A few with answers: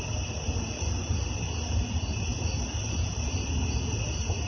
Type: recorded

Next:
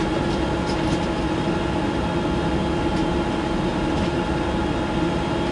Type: recorded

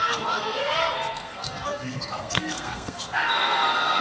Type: remade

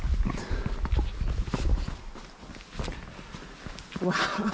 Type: recorded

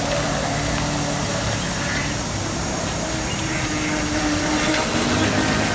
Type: recorded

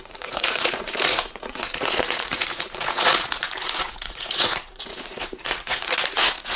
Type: remade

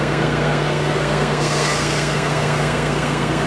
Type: remade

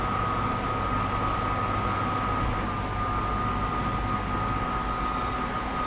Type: recorded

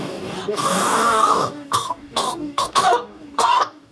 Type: remade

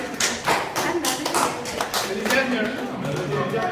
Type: remade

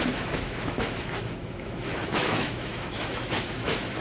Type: remade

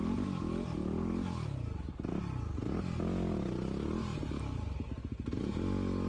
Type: recorded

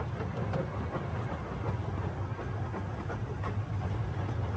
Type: recorded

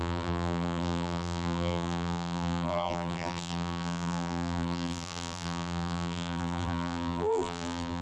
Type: remade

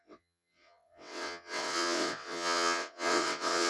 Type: remade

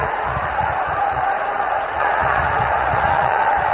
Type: remade